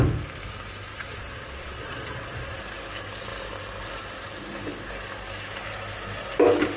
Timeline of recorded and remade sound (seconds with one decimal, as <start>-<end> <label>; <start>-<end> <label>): 0.0-0.9 recorded; 0.9-2.6 remade; 2.6-6.8 recorded